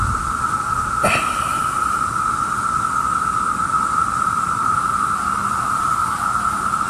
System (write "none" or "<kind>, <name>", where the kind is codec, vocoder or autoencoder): none